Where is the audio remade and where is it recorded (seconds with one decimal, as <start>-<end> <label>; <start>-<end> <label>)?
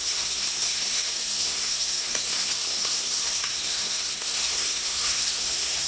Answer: 0.0-5.9 remade